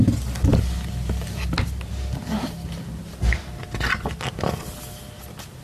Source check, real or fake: real